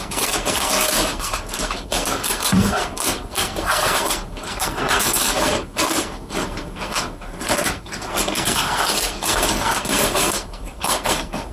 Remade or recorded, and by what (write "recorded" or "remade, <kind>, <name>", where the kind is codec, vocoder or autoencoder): remade, codec, SNAC